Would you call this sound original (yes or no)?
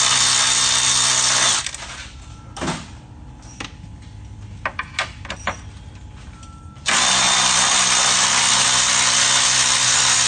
yes